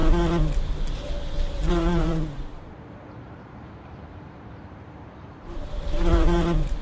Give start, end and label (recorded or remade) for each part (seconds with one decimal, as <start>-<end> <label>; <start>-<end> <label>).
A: 0.0-1.7 recorded; 1.7-6.8 remade